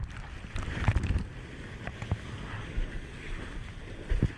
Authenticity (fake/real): real